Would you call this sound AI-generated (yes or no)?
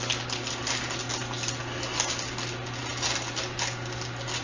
no